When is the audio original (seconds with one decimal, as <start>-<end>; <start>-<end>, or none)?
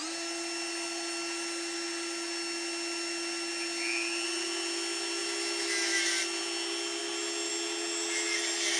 0.0-8.8